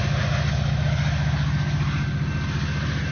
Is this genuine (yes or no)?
yes